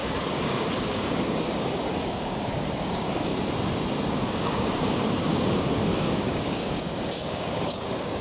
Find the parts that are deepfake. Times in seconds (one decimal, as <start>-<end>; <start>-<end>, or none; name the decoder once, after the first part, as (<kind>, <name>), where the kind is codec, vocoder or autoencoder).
0.0-3.3 (codec, DAC); 4.1-8.2